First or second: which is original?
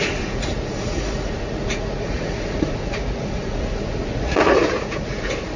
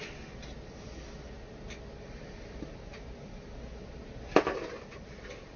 second